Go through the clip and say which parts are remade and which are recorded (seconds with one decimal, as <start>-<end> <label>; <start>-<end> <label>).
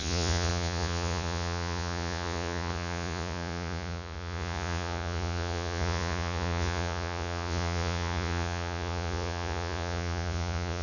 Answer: 0.0-10.8 remade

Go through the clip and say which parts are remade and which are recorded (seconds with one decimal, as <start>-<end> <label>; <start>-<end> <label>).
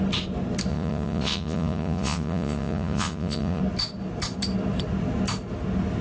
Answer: 0.0-0.7 recorded; 0.7-3.6 remade; 3.6-6.0 recorded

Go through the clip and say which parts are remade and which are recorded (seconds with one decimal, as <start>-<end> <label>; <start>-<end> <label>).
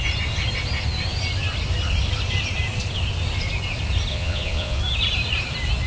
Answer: 0.0-4.1 recorded; 4.1-4.8 remade; 4.8-5.9 recorded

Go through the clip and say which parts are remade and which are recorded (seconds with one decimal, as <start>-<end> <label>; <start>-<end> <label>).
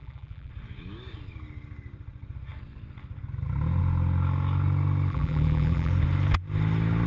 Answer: 0.0-0.5 remade; 0.5-5.1 recorded; 5.1-5.9 remade; 5.9-7.1 recorded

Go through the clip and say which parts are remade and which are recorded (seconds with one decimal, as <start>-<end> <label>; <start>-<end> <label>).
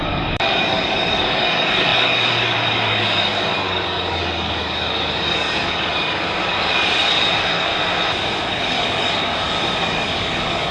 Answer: 0.0-7.7 remade; 7.7-8.5 recorded; 8.5-10.7 remade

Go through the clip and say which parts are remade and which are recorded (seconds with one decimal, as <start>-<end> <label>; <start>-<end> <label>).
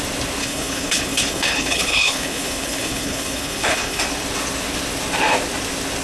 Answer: 0.0-0.4 recorded; 0.4-4.0 remade; 4.0-6.0 recorded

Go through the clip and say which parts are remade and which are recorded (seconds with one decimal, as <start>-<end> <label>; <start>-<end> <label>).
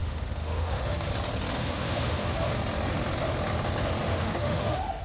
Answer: 0.0-1.1 remade; 1.1-1.6 recorded; 1.6-2.5 remade; 2.5-4.1 recorded; 4.1-5.0 remade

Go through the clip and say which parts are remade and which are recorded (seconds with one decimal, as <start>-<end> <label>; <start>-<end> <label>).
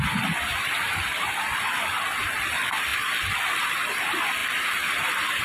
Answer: 0.0-5.4 recorded